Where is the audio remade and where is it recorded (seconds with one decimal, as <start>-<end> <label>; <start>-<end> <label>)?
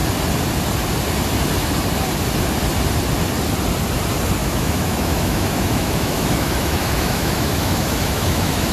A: 0.0-4.4 recorded; 4.4-8.7 remade